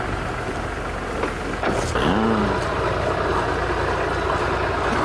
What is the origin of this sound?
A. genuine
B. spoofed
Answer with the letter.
A